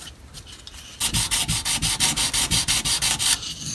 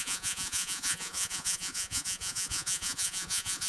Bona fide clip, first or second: first